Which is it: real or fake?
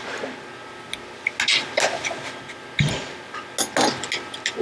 real